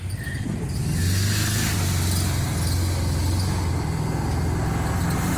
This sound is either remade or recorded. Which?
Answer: recorded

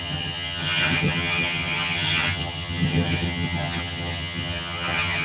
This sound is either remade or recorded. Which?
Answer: remade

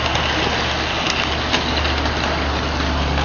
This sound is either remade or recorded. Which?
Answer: recorded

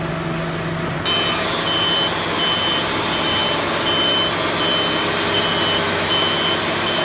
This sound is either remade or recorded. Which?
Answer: recorded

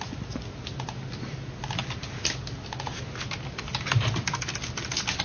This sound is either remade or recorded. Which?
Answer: recorded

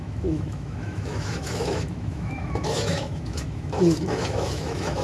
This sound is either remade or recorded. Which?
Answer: remade